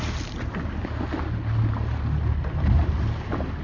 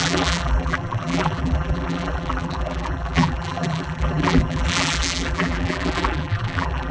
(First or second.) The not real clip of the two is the second